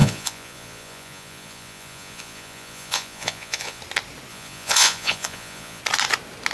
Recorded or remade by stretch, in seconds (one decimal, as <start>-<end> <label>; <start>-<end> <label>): 0.0-3.8 remade; 3.8-4.3 recorded; 4.3-5.8 remade; 5.8-6.5 recorded